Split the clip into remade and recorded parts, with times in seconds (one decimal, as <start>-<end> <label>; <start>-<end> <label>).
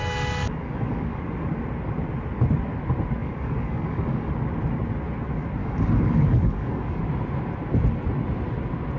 0.0-0.4 recorded; 0.4-1.2 remade; 1.2-3.2 recorded; 3.2-4.3 remade; 4.3-5.6 recorded; 5.6-7.0 remade; 7.0-9.0 recorded